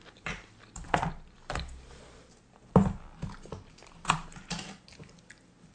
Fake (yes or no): no